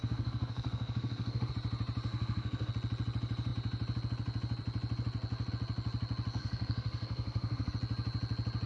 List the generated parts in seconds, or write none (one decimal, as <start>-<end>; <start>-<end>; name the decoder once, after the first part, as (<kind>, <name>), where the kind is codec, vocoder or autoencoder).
0.0-1.5 (codec, SNAC); 2.1-2.7; 6.4-7.7